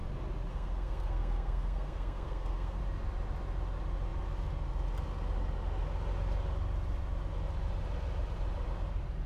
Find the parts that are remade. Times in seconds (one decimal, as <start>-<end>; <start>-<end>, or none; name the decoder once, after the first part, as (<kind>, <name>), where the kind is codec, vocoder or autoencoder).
0.5-2.8 (codec, SNAC)